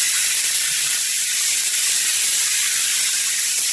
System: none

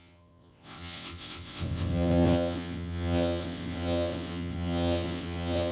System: vocoder, WaveNeXt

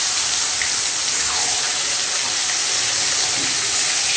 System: none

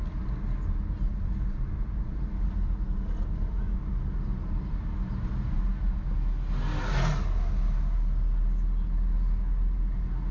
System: none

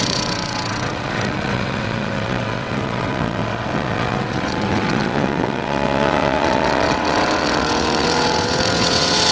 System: vocoder, WaveNeXt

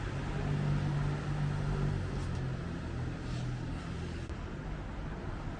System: none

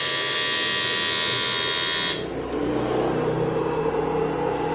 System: none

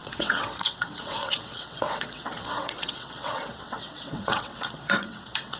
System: vocoder, WaveNeXt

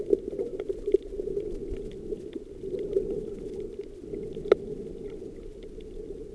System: none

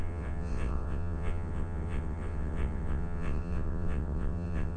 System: vocoder, WaveNeXt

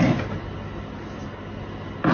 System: none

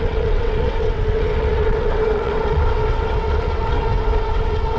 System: vocoder, WaveNeXt